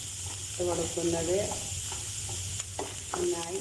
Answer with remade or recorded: recorded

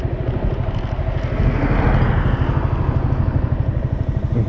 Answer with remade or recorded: recorded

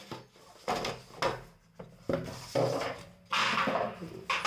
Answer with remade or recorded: recorded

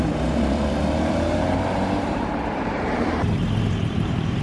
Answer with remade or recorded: remade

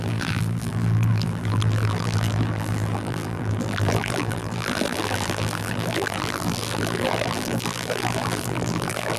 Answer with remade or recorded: remade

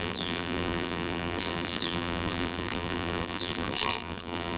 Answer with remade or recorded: remade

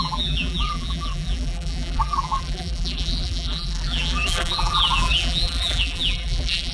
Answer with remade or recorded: remade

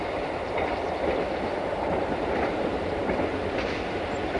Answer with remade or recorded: recorded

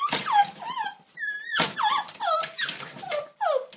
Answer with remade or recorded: remade